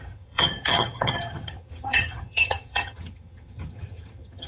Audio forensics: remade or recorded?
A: remade